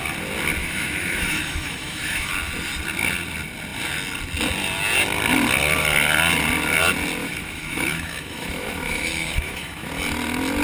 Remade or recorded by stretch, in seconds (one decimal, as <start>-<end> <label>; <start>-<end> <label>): 0.0-0.6 recorded; 0.6-2.3 remade; 2.3-7.2 recorded; 7.2-9.9 remade; 9.9-10.6 recorded